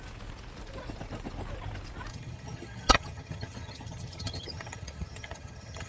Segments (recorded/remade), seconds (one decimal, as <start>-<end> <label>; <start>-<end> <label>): 0.0-2.1 recorded; 2.1-5.9 remade